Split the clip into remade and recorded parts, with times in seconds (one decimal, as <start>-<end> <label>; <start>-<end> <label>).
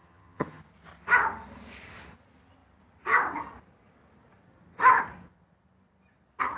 0.0-0.6 remade; 0.6-6.6 recorded